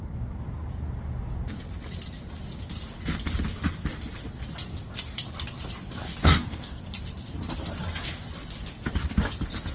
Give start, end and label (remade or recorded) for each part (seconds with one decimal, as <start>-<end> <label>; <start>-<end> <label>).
0.0-6.2 recorded; 6.2-6.8 remade; 6.8-9.7 recorded